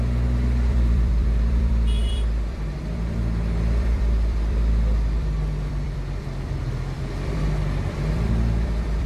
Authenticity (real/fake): fake